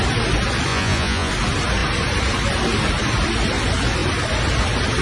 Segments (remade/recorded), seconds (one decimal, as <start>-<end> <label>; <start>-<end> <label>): 0.0-0.7 recorded; 0.7-1.3 remade; 1.3-5.0 recorded